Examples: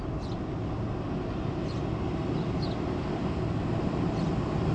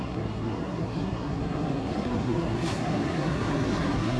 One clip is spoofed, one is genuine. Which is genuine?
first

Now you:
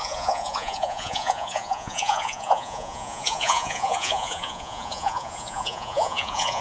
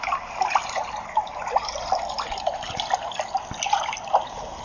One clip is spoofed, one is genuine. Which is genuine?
second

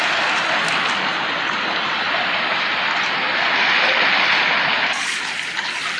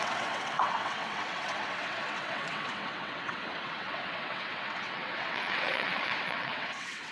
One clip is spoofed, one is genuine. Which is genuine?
first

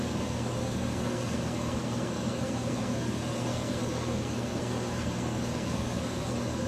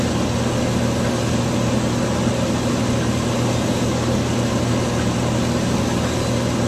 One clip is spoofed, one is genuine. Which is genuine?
second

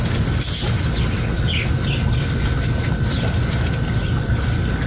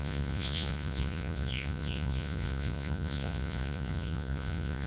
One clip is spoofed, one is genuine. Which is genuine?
first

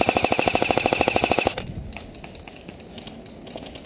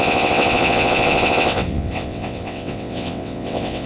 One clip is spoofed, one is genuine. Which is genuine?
first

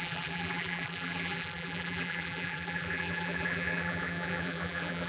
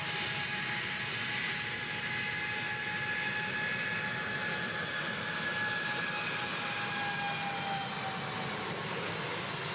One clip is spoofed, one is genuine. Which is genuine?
second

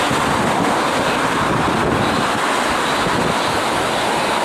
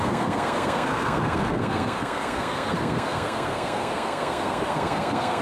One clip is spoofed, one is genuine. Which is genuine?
first